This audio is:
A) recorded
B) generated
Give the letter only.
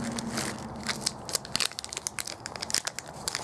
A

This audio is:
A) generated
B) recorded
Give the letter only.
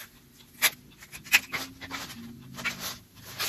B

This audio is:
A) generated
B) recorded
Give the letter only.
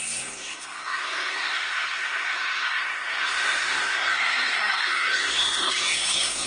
A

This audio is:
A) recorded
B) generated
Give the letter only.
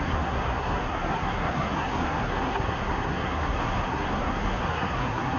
B